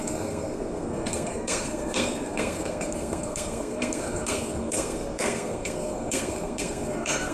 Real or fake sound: fake